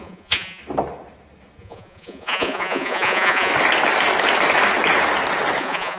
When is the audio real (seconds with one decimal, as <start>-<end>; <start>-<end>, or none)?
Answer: 0.6-1.6; 3.5-5.6